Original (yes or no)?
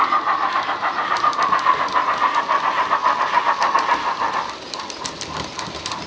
yes